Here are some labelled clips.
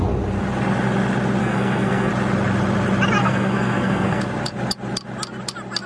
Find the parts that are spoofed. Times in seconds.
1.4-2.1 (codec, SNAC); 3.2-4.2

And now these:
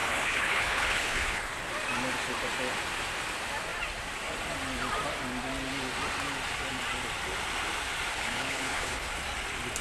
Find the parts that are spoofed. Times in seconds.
0.0-1.4 (codec, HILCodec); 8.1-9.1

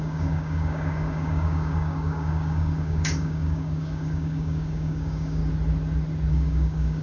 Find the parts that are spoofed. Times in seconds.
0.0-5.4 (codec, DAC); 6.3-7.0

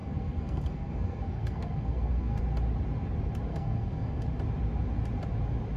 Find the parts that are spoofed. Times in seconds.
0.0-2.4 (codec, SNAC); 3.5-4.2

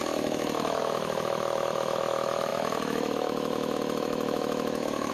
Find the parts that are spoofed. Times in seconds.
0.0-5.1 (autoencoder, DAC-VAE)

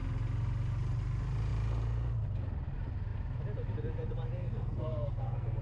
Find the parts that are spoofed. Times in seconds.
4.4-5.6 (codec, SNAC)

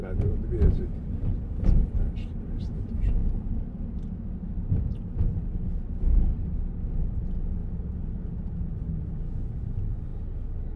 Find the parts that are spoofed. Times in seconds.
0.0-3.2 (vocoder, BigVGAN v2); 5.4-7.6; 9.7-10.1